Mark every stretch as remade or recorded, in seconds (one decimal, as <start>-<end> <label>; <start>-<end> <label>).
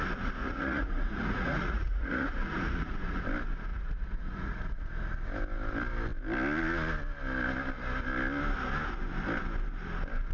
0.0-0.4 recorded; 0.4-3.2 remade; 3.2-3.7 recorded; 3.7-4.9 remade; 4.9-10.3 recorded